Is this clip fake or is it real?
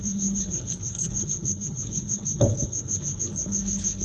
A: fake